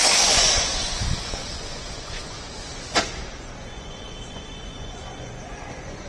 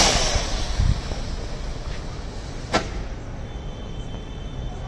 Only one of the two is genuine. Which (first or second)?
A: second